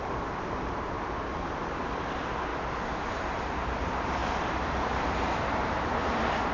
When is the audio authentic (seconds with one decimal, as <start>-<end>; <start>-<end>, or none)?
2.5-3.1